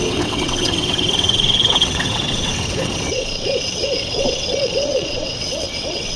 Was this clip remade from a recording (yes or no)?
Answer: yes